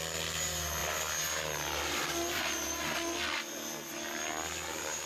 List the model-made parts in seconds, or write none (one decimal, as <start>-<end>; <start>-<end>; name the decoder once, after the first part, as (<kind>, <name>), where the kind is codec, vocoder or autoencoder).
none